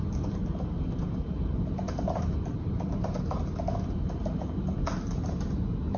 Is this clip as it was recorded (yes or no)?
yes